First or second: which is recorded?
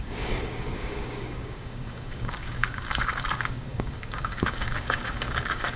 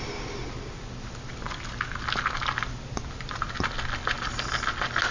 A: second